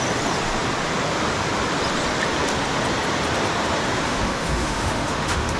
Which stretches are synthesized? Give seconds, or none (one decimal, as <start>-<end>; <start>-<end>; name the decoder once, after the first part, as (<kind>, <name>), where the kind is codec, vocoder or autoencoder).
4.1-5.6 (autoencoder, DAC-VAE)